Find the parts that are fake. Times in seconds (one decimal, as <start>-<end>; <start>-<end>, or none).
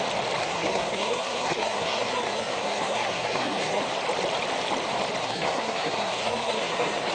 0.4-3.8; 5.2-7.1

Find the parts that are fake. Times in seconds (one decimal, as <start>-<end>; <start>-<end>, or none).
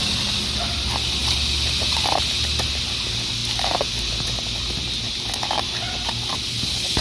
none